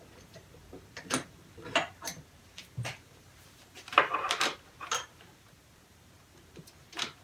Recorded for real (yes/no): no